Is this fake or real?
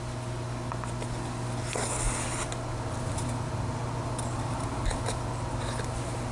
real